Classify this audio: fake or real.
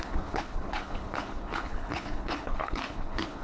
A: fake